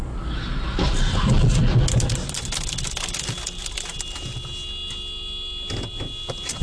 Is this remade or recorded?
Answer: recorded